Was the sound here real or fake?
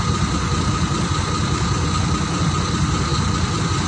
real